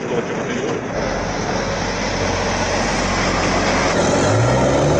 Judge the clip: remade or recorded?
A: recorded